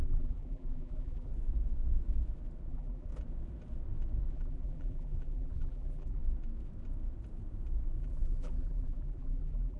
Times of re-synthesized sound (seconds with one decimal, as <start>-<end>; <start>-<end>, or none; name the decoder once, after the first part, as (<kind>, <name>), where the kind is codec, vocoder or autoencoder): 0.0-1.3 (vocoder, BigVGAN v2); 2.7-3.1; 4.3-6.2; 8.0-9.8